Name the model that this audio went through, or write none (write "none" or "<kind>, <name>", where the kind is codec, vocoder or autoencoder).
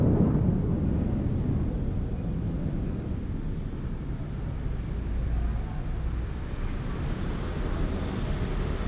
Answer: none